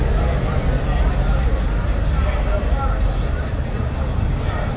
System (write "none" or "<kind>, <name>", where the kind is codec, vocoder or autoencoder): none